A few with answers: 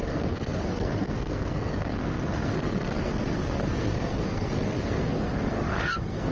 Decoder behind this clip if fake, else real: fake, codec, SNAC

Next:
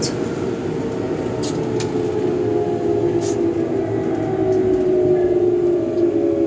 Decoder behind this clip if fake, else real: real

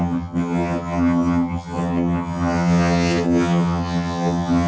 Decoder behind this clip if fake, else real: fake, vocoder, HiFi-GAN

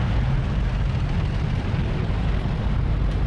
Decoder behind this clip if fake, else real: real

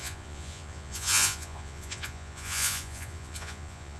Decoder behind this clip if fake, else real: fake, vocoder, Vocos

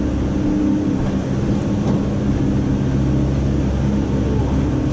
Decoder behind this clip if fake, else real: real